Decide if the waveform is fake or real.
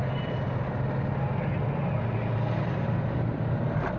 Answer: real